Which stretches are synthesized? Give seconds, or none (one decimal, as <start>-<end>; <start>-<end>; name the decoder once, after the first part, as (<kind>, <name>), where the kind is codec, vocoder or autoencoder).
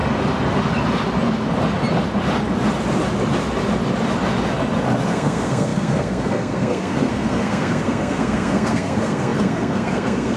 5.1-10.4 (codec, SNAC)